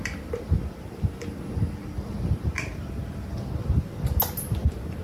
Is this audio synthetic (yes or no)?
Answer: no